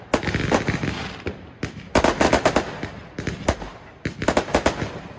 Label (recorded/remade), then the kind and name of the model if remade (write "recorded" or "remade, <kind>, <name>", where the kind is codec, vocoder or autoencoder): recorded